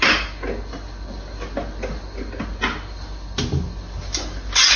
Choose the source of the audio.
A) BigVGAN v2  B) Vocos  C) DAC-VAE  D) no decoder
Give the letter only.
D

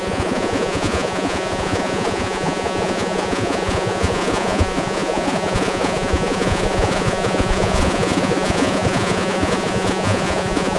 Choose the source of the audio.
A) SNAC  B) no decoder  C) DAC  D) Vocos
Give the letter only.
D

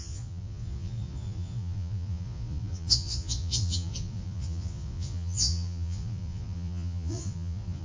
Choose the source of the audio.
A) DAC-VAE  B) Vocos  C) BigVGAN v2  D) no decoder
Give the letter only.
B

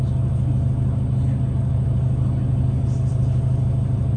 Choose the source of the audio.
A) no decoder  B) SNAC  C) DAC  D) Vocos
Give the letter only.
A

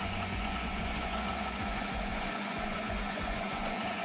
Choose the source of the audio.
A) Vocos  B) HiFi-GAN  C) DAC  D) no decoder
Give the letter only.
A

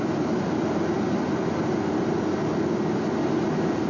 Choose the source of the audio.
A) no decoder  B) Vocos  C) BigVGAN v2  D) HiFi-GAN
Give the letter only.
A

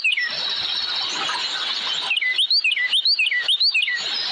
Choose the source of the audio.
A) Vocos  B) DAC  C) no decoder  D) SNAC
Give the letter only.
C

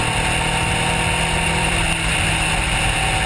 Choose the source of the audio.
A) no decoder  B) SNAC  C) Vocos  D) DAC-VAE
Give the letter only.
A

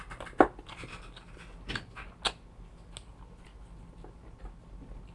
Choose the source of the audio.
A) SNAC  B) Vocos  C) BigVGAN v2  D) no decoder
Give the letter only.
D